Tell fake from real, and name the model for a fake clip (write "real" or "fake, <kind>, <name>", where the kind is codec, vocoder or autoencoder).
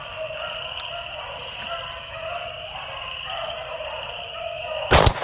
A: real